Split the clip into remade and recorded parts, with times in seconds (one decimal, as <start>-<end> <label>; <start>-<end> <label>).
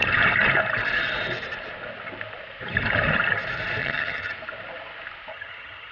0.0-3.8 recorded; 3.8-4.3 remade; 4.3-5.3 recorded; 5.3-5.9 remade